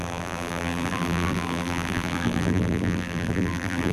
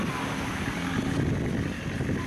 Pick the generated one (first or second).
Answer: first